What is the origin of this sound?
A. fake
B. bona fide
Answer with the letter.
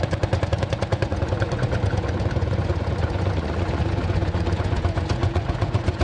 A